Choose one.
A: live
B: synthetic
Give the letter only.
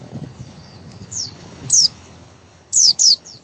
B